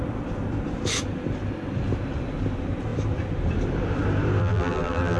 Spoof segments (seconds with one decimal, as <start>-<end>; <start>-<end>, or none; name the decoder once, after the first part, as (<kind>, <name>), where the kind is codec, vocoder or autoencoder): 4.4-5.2 (vocoder, BigVGAN v2)